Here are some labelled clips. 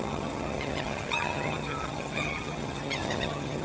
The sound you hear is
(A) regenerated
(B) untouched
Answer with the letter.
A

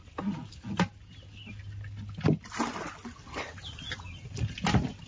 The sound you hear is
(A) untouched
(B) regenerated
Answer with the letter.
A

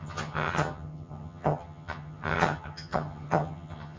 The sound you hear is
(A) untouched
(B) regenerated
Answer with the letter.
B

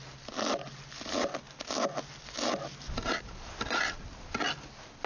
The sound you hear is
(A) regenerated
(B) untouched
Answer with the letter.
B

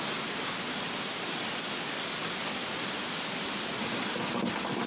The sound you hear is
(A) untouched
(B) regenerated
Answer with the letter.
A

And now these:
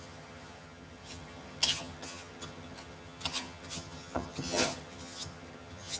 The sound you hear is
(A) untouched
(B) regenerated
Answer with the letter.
B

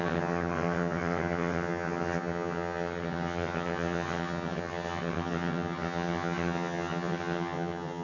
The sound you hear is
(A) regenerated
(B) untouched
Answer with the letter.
A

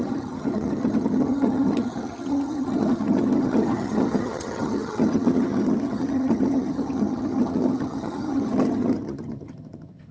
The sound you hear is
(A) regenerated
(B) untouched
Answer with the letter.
A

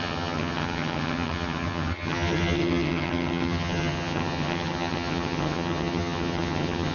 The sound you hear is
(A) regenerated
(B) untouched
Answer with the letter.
A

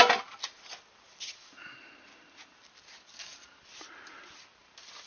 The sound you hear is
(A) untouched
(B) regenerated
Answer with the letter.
A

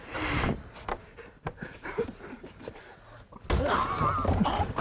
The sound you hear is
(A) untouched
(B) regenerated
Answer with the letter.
A